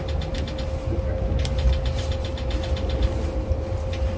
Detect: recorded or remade recorded